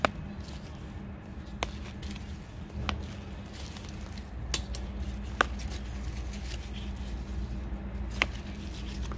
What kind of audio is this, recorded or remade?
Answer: recorded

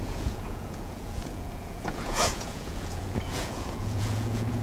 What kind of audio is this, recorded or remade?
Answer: remade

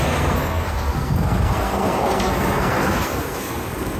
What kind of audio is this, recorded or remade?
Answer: remade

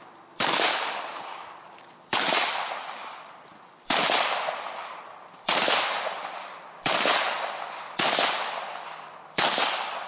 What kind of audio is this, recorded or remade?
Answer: remade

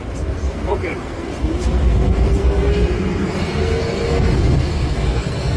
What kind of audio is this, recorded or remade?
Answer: remade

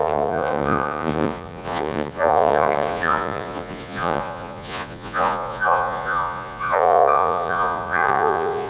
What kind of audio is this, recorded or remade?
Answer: remade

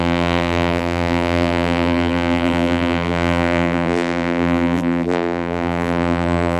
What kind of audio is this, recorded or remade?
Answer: remade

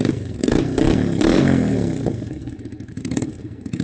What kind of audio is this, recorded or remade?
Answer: remade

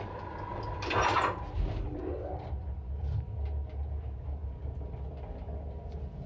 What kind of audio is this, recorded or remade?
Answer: recorded